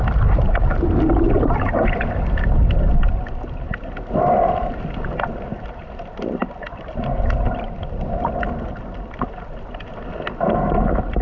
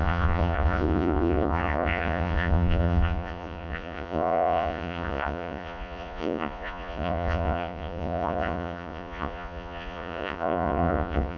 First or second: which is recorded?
first